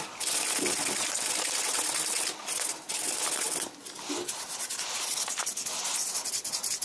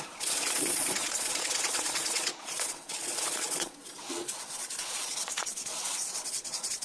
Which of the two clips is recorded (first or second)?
first